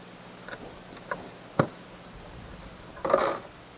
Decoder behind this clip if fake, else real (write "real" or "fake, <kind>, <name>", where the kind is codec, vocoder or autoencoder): real